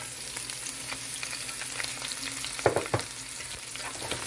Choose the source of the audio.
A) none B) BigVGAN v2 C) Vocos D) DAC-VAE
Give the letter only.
A